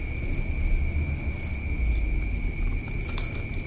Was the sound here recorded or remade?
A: recorded